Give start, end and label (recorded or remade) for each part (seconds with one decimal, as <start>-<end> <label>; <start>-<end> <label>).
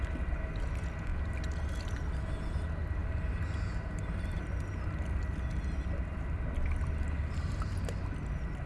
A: 0.0-8.7 recorded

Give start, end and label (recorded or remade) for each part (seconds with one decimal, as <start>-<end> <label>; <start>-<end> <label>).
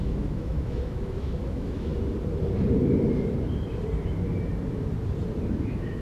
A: 0.0-1.9 remade; 1.9-5.5 recorded; 5.5-6.0 remade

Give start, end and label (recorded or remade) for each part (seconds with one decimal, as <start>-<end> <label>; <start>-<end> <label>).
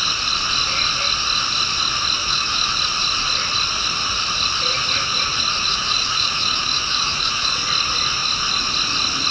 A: 0.0-2.2 recorded; 2.2-2.7 remade; 2.7-5.7 recorded; 5.7-7.5 remade; 7.5-9.3 recorded